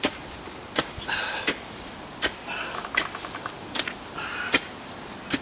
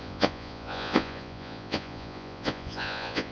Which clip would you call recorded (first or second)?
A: first